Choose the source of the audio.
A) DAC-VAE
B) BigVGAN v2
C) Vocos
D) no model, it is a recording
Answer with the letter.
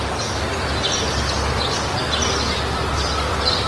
D